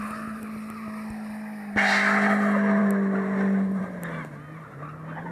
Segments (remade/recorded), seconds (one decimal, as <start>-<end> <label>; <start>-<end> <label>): 0.0-5.3 recorded